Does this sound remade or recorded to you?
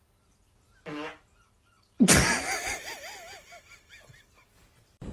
recorded